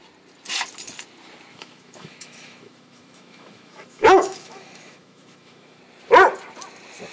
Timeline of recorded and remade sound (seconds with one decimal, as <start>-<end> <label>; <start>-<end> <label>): 0.0-1.5 recorded; 1.5-5.8 remade; 5.8-7.1 recorded